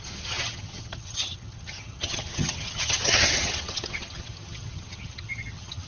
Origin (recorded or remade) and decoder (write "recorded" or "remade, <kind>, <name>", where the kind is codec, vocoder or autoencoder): remade, vocoder, HiFi-GAN